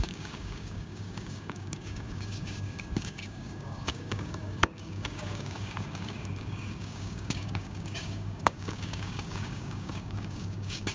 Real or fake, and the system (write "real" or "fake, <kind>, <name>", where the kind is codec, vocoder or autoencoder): fake, codec, DAC